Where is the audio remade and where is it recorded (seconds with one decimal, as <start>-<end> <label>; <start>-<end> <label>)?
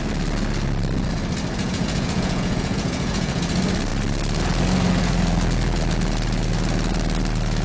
0.0-1.6 recorded; 1.6-3.5 remade; 3.5-7.6 recorded